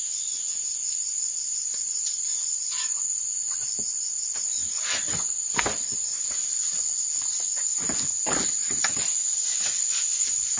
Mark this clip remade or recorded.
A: recorded